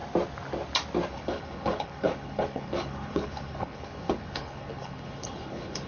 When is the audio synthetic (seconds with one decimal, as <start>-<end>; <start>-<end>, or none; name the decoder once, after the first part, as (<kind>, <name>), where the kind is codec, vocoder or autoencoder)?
1.1-5.9 (codec, HILCodec)